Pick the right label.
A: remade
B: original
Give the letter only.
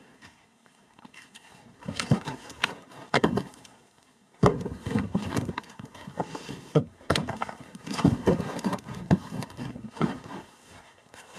A